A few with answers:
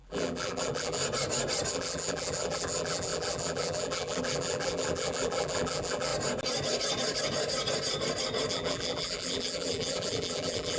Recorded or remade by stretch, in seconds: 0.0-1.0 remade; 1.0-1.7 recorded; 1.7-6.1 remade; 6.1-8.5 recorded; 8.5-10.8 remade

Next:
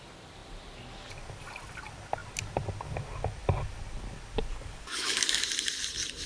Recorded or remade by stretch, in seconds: 0.0-4.5 recorded; 4.5-5.4 remade; 5.4-6.3 recorded

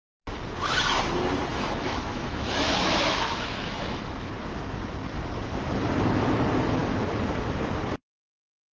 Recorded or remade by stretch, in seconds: 0.0-1.5 recorded; 1.5-4.3 remade; 4.3-8.7 recorded

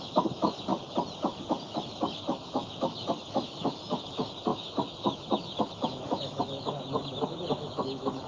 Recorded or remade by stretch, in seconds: 0.0-0.7 remade; 0.7-1.6 recorded; 1.6-8.3 remade